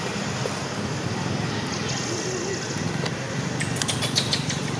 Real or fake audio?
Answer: real